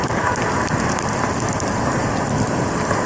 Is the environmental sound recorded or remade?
remade